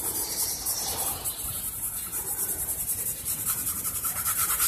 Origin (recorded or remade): remade